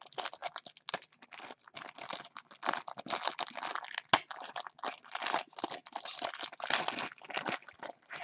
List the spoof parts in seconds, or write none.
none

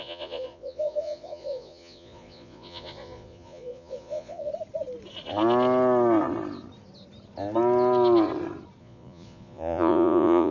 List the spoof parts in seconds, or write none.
0.0-4.5; 8.8-10.5

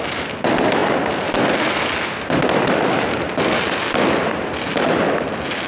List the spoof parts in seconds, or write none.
none

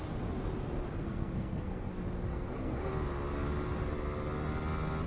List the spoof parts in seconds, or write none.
1.0-1.9; 2.3-2.9